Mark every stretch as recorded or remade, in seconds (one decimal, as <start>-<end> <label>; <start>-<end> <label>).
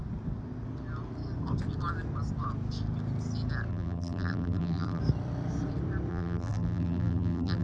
0.0-3.7 recorded; 3.7-5.0 remade; 5.0-6.1 recorded; 6.1-7.6 remade